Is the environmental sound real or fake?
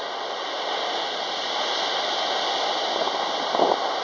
real